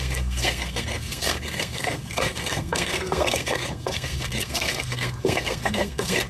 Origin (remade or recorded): remade